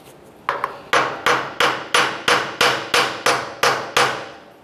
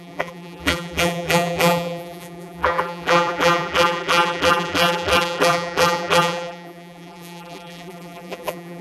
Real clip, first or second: first